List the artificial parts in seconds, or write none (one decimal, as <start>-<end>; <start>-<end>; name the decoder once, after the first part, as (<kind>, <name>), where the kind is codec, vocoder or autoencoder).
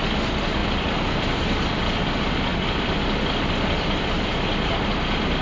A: 0.0-5.4 (vocoder, BigVGAN v2)